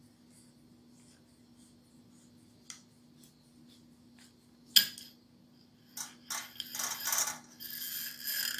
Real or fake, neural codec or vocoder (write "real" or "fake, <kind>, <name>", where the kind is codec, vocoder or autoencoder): real